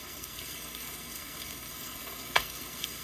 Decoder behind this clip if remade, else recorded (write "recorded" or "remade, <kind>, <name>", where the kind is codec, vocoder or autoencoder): remade, codec, SNAC